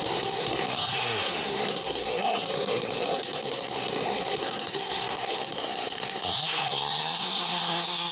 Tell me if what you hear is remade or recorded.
remade